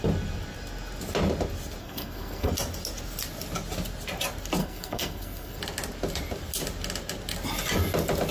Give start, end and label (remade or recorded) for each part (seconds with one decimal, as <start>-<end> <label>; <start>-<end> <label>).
0.0-1.8 recorded; 1.8-2.5 remade; 2.5-4.6 recorded; 4.6-5.6 remade; 5.6-8.3 recorded